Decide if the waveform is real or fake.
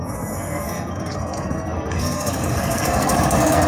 fake